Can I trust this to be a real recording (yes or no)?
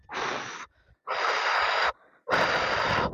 yes